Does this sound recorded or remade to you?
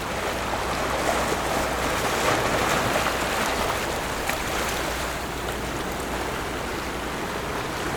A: recorded